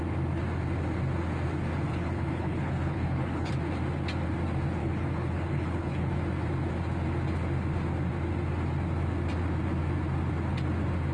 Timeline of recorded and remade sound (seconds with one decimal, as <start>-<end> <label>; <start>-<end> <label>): 0.0-1.9 recorded; 1.9-3.5 remade; 3.5-4.8 recorded; 4.8-6.1 remade; 6.1-11.1 recorded